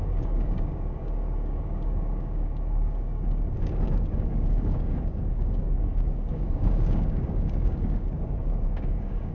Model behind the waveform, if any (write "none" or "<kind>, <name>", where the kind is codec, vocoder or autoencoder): codec, DAC